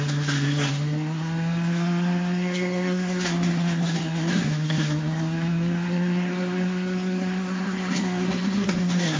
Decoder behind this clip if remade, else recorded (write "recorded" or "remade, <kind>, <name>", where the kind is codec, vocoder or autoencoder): remade, codec, SNAC